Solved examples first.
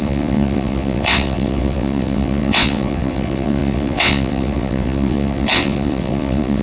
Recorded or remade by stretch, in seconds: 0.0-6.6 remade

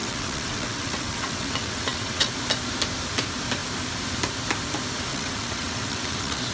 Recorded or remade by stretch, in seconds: 0.0-2.3 remade; 2.3-5.1 recorded; 5.1-6.5 remade

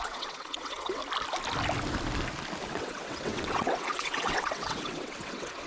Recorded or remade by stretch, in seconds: 0.0-1.0 remade; 1.0-2.7 recorded; 2.7-5.7 remade

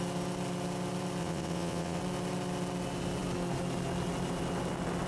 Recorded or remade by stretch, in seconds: 0.0-1.2 recorded; 1.2-2.0 remade; 2.0-5.1 recorded

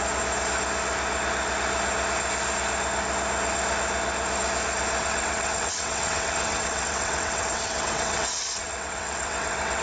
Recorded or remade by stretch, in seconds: 0.0-5.0 recorded; 5.0-9.8 remade

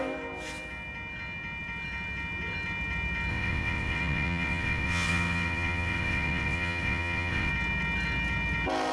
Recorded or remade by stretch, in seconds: 0.0-3.3 recorded; 3.3-7.5 remade; 7.5-8.9 recorded

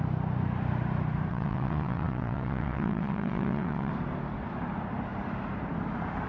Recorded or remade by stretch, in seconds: 0.0-1.3 recorded; 1.3-3.9 remade; 3.9-6.3 recorded